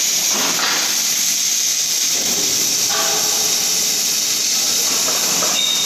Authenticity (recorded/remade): recorded